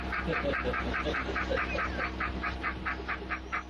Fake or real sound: real